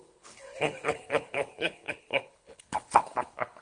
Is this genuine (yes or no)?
no